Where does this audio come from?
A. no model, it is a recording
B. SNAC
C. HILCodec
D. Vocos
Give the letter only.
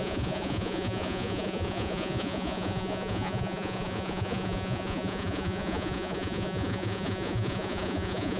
D